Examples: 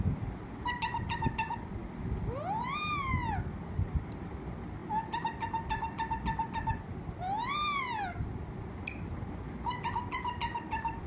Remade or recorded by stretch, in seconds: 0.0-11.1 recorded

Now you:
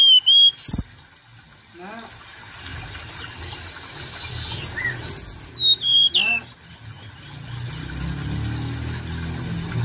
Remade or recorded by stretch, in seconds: 0.0-9.8 recorded

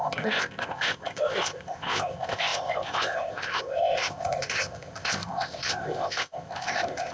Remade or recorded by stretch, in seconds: 0.0-7.1 remade

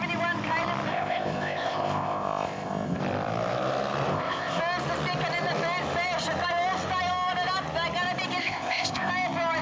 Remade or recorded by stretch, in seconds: 0.0-0.9 recorded; 0.9-3.0 remade; 3.0-4.1 recorded; 4.1-4.6 remade; 4.6-8.4 recorded; 8.4-9.1 remade; 9.1-9.6 recorded

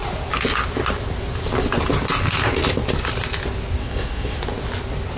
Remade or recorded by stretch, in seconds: 0.0-3.8 recorded; 3.8-4.4 remade; 4.4-5.2 recorded